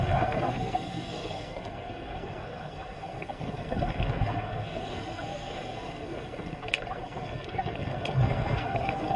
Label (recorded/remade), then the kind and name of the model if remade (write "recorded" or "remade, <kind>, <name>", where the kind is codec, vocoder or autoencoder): remade, codec, SNAC